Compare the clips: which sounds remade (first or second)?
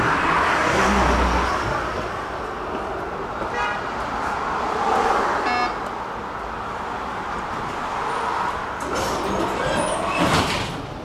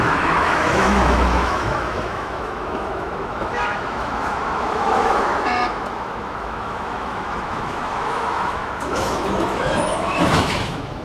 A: second